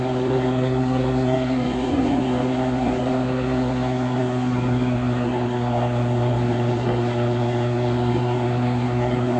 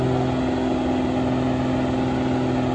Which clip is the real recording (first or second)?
second